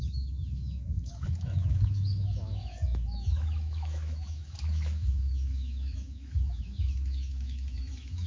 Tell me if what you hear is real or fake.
fake